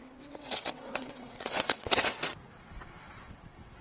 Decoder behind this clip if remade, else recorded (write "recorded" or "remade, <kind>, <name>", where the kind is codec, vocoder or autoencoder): remade, vocoder, WaveNeXt